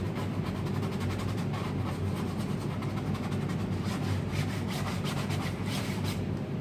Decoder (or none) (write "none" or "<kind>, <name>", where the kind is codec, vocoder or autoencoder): none